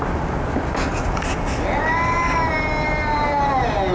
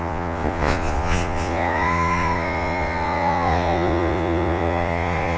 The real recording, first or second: first